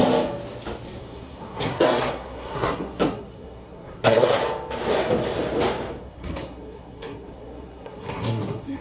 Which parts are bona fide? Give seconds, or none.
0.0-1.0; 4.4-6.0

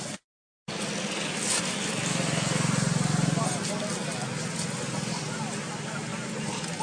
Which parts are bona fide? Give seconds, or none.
0.0-6.8

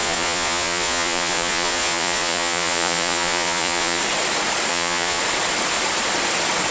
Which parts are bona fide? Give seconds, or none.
4.0-4.7; 5.2-6.7

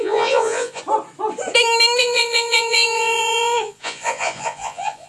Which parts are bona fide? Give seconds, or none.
0.8-2.0

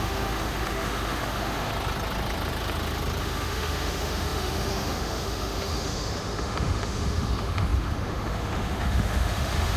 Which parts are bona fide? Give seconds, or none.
1.7-3.2